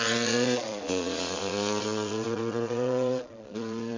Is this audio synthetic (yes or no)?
yes